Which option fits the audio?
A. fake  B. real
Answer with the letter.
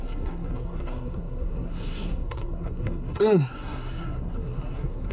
A